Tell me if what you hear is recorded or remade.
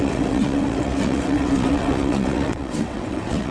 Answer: remade